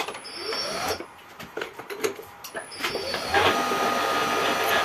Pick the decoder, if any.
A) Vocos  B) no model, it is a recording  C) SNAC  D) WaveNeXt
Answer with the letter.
B